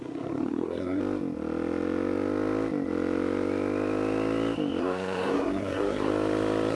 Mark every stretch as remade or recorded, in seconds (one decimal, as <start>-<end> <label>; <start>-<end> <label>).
0.0-1.0 remade; 1.0-4.8 recorded; 4.8-6.1 remade; 6.1-6.7 recorded